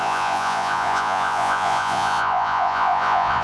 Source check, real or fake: fake